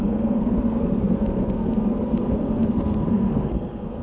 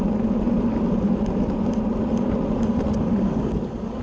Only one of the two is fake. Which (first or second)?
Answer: first